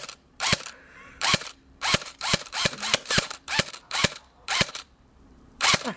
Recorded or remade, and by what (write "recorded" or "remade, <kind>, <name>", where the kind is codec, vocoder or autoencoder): remade, vocoder, BigVGAN v2